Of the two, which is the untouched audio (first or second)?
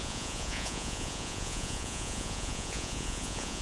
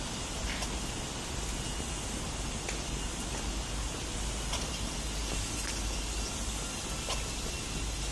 second